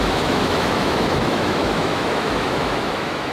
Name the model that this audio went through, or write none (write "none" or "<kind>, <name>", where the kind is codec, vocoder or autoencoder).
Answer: autoencoder, DAC-VAE